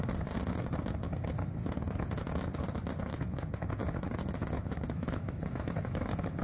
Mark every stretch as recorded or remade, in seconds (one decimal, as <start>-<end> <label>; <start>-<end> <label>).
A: 0.0-3.1 recorded; 3.1-6.4 remade